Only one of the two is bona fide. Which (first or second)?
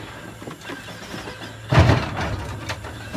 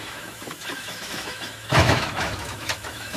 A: first